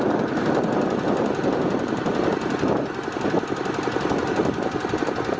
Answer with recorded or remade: recorded